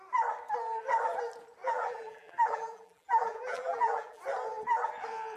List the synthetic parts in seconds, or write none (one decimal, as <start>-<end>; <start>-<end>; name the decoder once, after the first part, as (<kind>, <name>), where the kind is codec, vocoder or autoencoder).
1.6-4.2 (vocoder, BigVGAN v2)